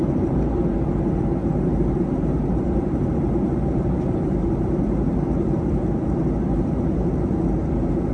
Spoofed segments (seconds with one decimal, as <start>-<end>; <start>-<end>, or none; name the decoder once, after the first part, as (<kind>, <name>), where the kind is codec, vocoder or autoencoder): 0.0-0.6 (vocoder, BigVGAN v2); 1.4-5.1